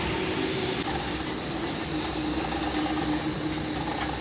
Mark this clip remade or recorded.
recorded